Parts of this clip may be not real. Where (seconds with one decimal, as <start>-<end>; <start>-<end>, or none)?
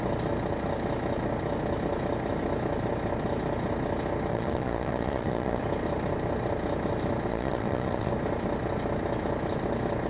4.3-5.6; 7.3-8.1